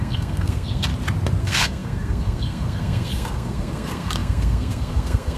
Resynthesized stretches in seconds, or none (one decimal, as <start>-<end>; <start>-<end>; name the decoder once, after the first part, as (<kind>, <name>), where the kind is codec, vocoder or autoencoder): 0.0-0.9 (codec, SNAC); 1.4-5.4